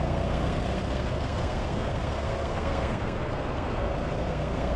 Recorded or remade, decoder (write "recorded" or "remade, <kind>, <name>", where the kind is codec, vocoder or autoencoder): remade, codec, SNAC